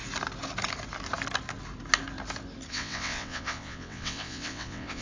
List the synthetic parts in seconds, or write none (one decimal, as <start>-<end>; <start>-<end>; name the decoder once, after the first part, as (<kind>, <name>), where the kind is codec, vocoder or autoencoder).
2.7-5.0 (vocoder, WaveNeXt)